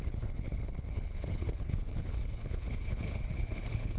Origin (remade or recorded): remade